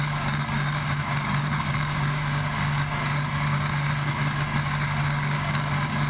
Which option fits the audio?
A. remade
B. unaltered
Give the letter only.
A